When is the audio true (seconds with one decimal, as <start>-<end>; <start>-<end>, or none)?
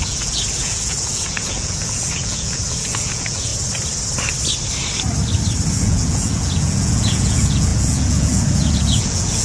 3.5-5.7